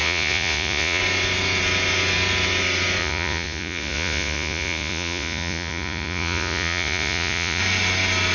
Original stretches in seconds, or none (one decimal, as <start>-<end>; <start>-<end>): 1.0-3.0; 7.6-8.3